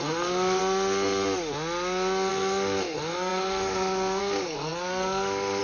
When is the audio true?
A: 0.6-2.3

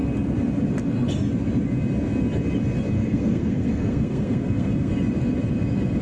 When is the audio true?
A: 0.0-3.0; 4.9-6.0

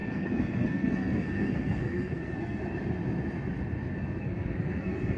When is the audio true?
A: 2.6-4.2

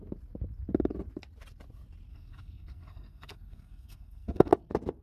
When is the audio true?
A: 0.0-2.1; 4.5-5.0

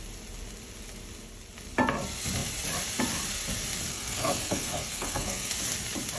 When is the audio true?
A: 0.0-3.9; 5.5-6.2

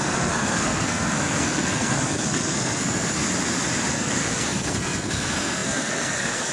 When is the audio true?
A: 3.2-3.9

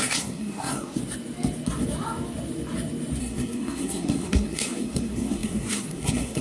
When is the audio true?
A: 1.0-3.2

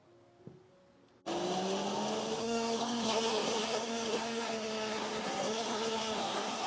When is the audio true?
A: 0.0-2.4